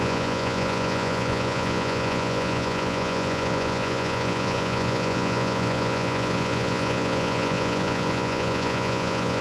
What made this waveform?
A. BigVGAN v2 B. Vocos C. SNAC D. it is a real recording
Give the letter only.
B